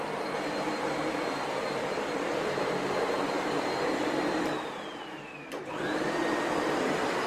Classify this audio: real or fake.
fake